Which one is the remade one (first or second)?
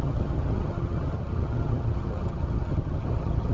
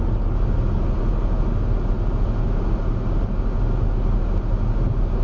first